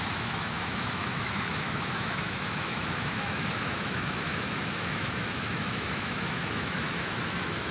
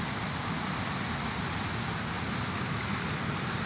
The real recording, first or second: second